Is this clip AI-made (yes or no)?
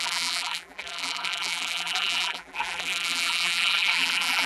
yes